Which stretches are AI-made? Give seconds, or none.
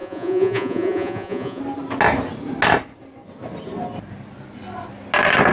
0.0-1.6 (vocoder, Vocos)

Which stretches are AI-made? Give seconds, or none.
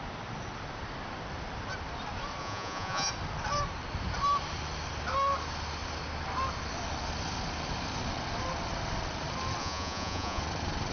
2.4-3.1 (vocoder, Vocos); 9.6-10.4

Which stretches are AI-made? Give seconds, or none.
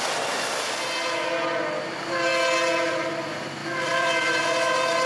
3.6-4.4 (vocoder, BigVGAN v2)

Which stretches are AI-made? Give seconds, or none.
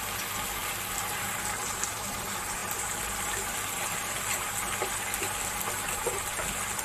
0.6-2.2 (vocoder, BigVGAN v2)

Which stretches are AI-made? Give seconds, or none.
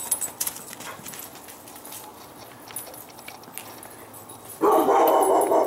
none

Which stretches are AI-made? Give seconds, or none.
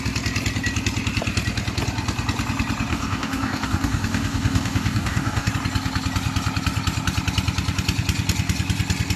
2.9-5.5 (codec, DAC)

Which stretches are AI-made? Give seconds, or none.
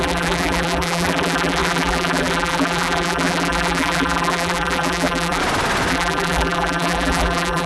0.0-5.4 (vocoder, BigVGAN v2); 5.9-7.7